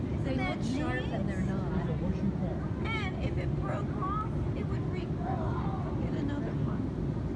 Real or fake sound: real